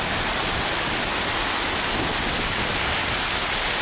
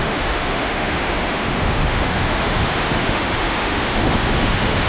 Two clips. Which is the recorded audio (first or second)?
first